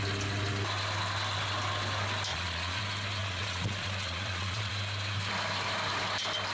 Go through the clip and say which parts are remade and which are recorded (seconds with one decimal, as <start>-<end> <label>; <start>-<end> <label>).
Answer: 0.0-2.3 recorded; 2.3-2.8 remade; 2.8-3.2 recorded; 3.2-4.7 remade; 4.7-6.5 recorded